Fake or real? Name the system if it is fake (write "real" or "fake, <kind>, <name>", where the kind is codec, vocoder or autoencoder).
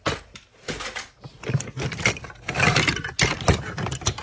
real